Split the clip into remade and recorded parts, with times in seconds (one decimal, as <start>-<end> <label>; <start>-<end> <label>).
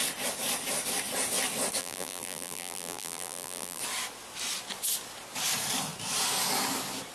0.0-1.8 recorded; 1.8-3.8 remade; 3.8-7.1 recorded